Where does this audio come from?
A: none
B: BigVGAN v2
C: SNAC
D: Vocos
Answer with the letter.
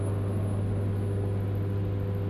A